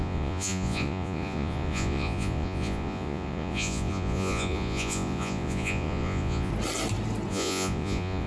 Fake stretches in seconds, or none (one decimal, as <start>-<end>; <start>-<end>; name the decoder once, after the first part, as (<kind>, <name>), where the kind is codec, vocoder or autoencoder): 0.0-6.5 (vocoder, Vocos); 7.3-8.3